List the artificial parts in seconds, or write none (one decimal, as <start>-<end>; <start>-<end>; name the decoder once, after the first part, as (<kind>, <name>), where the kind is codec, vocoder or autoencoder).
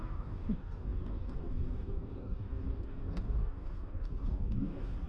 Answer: 0.0-5.1 (codec, DAC)